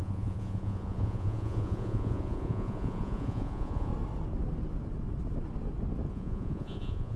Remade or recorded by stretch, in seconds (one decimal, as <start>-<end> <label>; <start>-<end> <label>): 0.0-3.9 remade; 3.9-6.1 recorded; 6.1-7.2 remade